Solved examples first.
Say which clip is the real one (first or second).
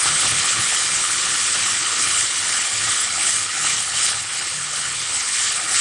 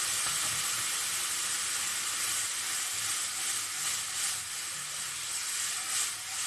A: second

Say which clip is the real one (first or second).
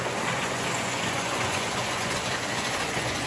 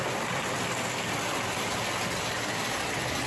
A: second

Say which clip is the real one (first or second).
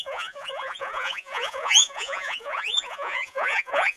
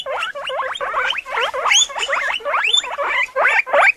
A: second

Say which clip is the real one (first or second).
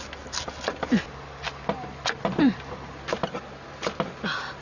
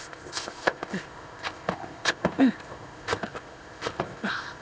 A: first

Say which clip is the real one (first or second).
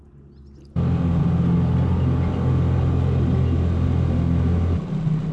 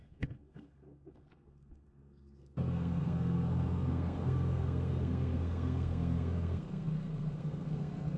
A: first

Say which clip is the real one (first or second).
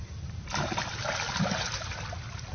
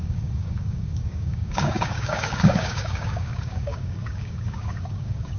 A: first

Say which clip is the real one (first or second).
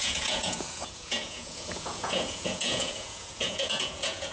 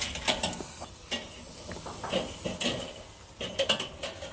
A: second